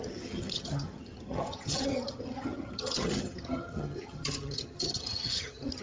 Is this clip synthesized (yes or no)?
yes